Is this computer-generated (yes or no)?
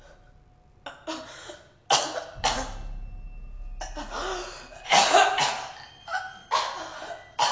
no